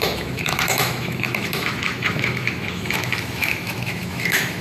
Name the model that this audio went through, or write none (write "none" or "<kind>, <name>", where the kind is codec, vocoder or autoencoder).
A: autoencoder, DAC-VAE